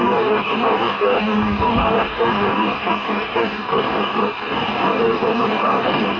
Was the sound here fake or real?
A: fake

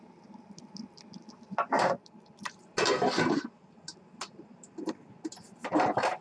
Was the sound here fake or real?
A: real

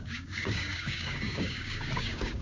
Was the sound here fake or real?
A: fake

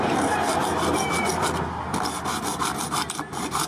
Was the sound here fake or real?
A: real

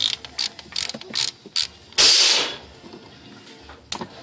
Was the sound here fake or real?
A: real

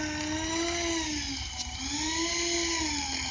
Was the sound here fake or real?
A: real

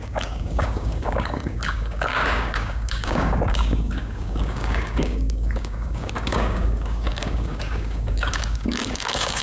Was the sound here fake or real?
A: fake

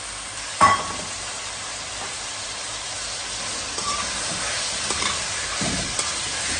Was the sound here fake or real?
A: real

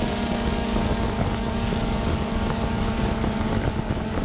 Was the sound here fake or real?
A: fake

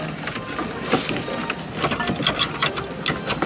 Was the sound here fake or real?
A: real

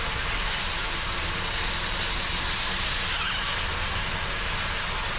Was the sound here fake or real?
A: real